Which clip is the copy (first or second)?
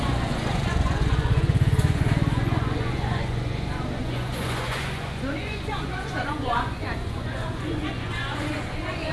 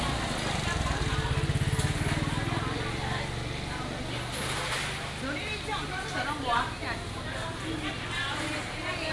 first